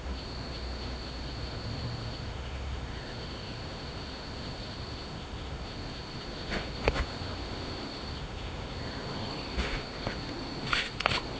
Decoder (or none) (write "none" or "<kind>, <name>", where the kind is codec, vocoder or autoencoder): autoencoder, DAC-VAE